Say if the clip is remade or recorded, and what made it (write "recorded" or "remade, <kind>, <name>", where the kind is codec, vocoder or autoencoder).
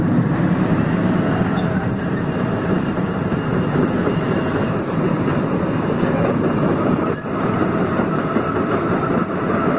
remade, vocoder, BigVGAN v2